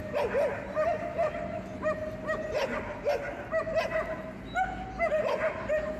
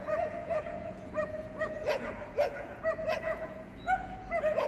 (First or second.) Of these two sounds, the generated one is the second